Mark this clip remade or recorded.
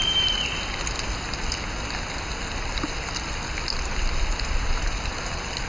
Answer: recorded